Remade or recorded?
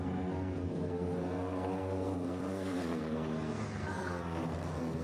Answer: remade